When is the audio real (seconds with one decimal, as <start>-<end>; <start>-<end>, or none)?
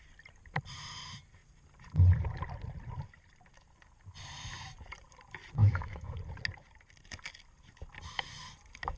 0.0-5.6; 6.2-9.0